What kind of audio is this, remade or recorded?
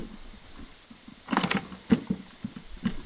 recorded